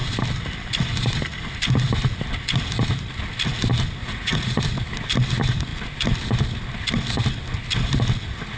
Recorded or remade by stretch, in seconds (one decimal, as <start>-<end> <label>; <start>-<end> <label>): 0.0-4.0 recorded; 4.0-4.6 remade; 4.6-8.6 recorded

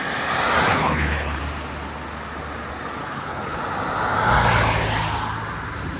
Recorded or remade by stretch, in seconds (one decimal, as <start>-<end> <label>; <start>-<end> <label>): 0.0-0.7 recorded; 0.7-1.4 remade; 1.4-3.0 recorded; 3.0-3.6 remade; 3.6-6.0 recorded

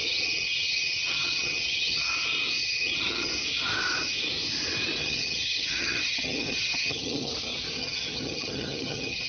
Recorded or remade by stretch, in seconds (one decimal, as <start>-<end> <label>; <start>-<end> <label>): 0.0-2.1 remade; 2.1-2.6 recorded; 2.6-3.3 remade; 3.3-5.0 recorded; 5.0-7.3 remade; 7.3-7.8 recorded; 7.8-9.3 remade

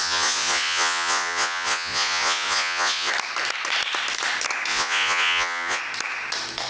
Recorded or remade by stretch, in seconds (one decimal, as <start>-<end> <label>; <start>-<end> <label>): 0.0-3.1 remade; 3.1-4.7 recorded; 4.7-5.8 remade; 5.8-6.7 recorded

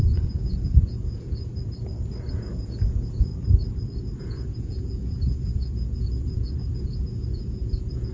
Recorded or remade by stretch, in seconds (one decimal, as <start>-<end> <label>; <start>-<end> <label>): 0.0-1.5 remade; 1.5-2.3 recorded; 2.3-3.3 remade; 3.3-4.2 recorded; 4.2-8.1 remade

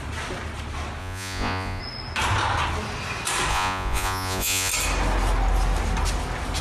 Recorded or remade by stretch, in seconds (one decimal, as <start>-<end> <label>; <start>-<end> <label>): 0.0-1.0 recorded; 1.0-1.8 remade; 1.8-3.5 recorded; 3.5-4.7 remade; 4.7-6.6 recorded

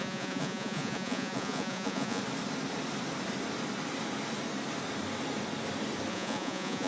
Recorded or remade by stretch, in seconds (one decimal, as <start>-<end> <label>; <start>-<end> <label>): 0.0-2.2 remade; 2.2-6.1 recorded; 6.1-6.9 remade

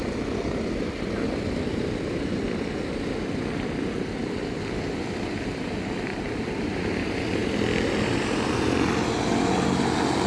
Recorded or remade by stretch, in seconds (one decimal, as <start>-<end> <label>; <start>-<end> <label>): 0.0-10.3 recorded